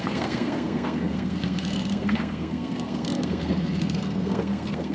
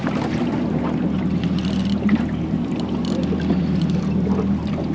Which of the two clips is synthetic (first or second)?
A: first